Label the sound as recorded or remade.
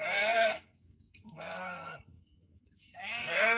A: remade